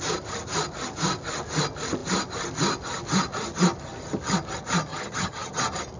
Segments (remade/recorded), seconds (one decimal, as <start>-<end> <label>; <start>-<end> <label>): 0.0-4.9 recorded; 4.9-5.6 remade; 5.6-6.0 recorded